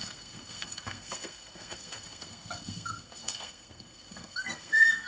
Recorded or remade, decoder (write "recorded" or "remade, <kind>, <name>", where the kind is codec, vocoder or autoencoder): remade, codec, SNAC